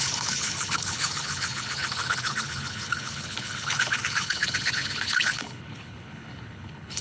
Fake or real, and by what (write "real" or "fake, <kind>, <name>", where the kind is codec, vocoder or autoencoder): fake, codec, HILCodec